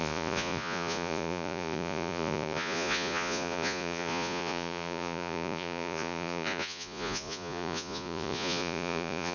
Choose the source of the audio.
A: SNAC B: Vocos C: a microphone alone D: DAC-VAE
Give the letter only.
B